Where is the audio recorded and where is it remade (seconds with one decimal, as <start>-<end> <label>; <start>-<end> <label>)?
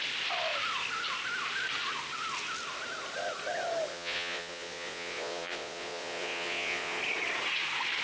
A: 0.0-3.9 recorded; 3.9-7.0 remade; 7.0-8.0 recorded